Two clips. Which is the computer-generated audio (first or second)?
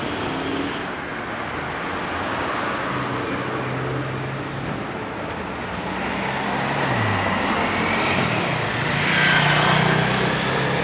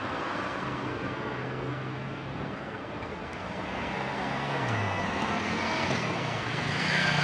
second